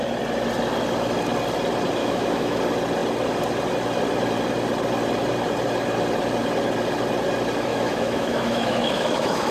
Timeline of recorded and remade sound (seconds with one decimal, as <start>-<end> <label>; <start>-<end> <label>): 0.0-2.0 recorded; 2.0-2.6 remade; 2.6-7.7 recorded; 7.7-9.5 remade